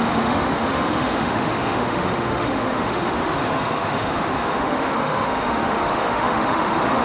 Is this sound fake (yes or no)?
yes